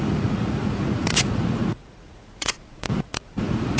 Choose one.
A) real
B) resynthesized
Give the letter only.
B